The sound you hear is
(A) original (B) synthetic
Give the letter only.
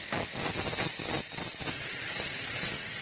A